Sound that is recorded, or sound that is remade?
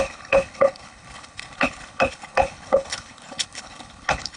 remade